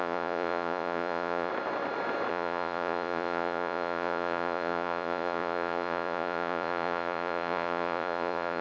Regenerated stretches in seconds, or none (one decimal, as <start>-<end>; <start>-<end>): 0.0-1.5; 2.3-8.6

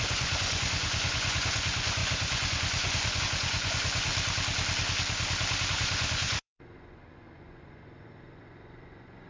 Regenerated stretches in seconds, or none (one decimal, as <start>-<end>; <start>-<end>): 0.0-4.1; 5.7-9.3

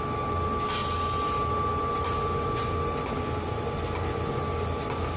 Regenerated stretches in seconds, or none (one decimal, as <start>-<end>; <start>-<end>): none

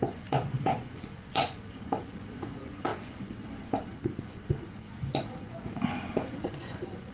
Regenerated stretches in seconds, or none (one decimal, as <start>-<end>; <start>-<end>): 0.0-7.1

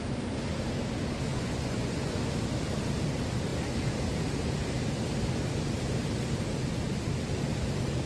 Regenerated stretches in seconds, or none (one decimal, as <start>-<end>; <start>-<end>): 1.3-2.2

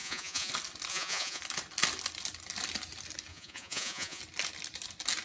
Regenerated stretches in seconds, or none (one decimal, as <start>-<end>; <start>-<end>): 0.0-0.5; 0.9-1.4; 3.3-4.2

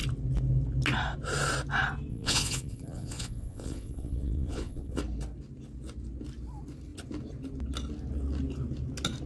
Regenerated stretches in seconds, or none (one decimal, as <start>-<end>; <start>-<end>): 2.1-5.0